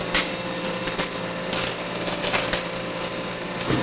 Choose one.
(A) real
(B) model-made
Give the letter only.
A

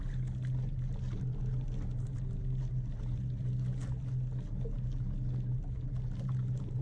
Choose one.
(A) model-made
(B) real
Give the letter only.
B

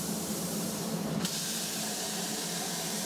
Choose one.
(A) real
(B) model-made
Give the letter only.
B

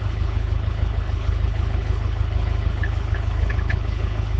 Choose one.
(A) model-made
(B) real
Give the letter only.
A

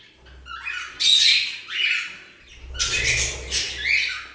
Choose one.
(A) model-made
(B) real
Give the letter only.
B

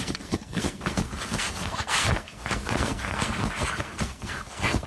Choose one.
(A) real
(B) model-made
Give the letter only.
B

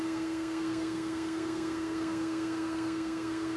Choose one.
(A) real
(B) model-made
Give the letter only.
B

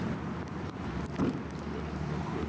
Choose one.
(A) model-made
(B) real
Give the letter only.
B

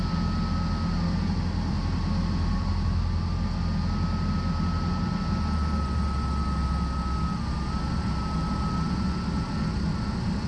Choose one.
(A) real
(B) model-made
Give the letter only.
A